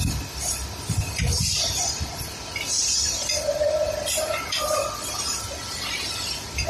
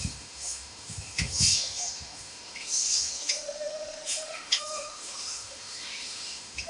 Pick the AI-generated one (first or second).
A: second